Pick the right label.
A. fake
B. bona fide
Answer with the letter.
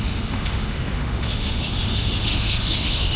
A